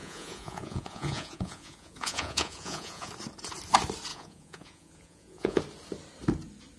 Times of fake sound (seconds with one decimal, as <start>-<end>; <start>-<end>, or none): 0.0-3.1; 4.1-5.6